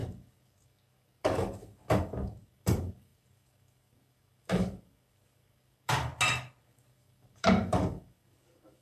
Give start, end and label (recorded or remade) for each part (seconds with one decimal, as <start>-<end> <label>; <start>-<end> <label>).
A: 0.0-6.1 remade; 6.1-6.6 recorded; 6.6-8.8 remade